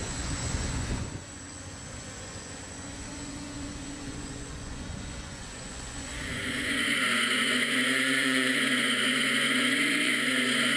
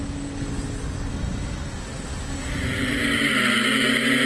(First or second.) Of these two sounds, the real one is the second